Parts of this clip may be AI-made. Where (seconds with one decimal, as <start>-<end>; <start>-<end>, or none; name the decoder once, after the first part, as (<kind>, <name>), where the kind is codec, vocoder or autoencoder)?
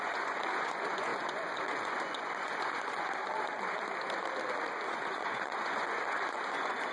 0.0-3.2 (vocoder, Vocos); 4.7-6.9